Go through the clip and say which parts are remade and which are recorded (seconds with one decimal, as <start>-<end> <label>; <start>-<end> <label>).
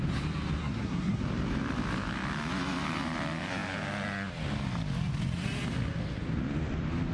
0.0-0.6 recorded; 0.6-1.2 remade; 1.2-7.1 recorded